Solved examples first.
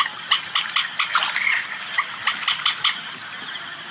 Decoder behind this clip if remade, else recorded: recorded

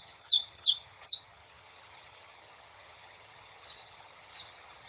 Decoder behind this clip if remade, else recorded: remade, vocoder, HiFi-GAN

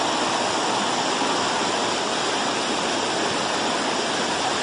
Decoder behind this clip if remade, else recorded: recorded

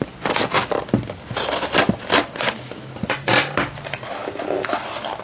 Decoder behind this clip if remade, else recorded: recorded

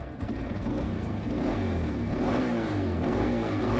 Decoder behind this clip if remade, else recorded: remade, codec, SNAC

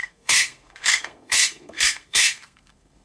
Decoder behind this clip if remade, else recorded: remade, codec, SNAC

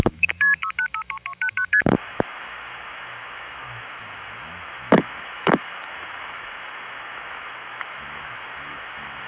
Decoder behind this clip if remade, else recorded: remade, autoencoder, DAC-VAE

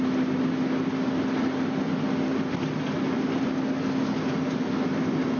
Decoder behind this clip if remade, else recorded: recorded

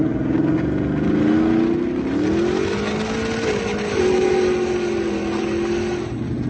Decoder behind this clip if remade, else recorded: recorded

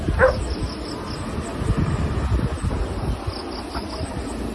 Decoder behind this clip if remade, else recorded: recorded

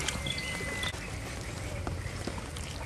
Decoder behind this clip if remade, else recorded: recorded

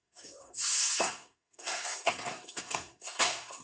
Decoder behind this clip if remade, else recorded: remade, codec, SNAC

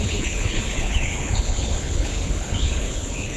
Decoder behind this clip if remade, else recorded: remade, codec, HILCodec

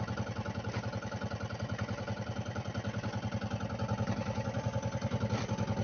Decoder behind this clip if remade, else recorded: recorded